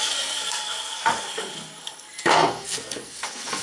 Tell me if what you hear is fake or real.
fake